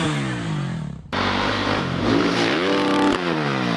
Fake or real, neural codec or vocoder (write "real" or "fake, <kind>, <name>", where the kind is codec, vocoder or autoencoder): real